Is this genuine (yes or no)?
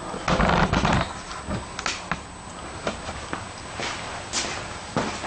yes